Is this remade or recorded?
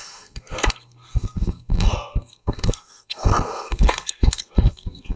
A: remade